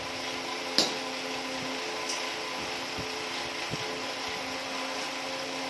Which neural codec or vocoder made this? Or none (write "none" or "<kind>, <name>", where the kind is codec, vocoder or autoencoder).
none